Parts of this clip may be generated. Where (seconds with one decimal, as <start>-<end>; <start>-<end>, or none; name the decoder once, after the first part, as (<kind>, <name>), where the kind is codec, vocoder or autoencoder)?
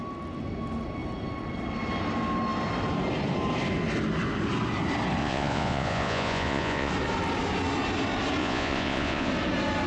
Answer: 5.2-6.9 (vocoder, Vocos); 8.4-9.3